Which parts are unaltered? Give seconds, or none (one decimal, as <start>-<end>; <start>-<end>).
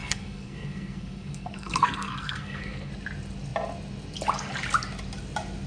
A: 2.9-5.7